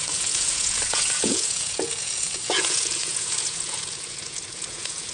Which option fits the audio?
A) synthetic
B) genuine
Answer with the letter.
A